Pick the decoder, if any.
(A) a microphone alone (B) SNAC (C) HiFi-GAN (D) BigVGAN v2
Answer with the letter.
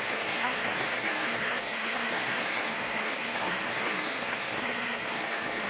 B